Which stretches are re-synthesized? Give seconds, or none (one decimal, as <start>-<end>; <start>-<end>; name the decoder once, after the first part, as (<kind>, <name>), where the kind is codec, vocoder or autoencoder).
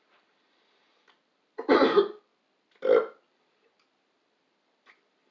0.0-2.3 (vocoder, BigVGAN v2); 4.4-5.3